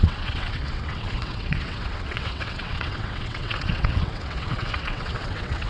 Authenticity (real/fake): fake